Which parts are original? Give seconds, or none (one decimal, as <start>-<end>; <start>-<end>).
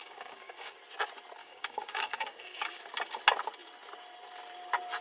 0.8-1.4; 2.8-5.0